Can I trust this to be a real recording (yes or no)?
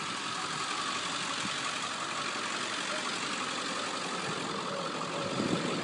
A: yes